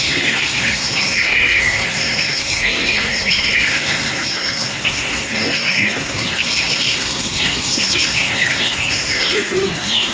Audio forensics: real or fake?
fake